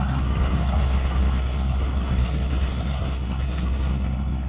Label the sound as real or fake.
fake